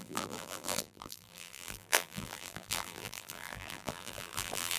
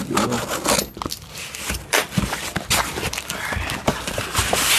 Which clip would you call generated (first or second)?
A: first